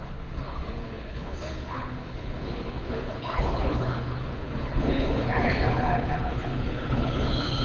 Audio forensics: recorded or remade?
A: remade